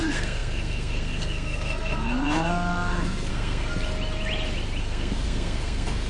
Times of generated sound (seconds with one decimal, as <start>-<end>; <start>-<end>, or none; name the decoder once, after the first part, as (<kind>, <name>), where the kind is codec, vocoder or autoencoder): 0.0-3.7 (codec, SNAC); 4.8-6.1